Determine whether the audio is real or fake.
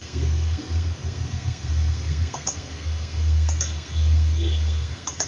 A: fake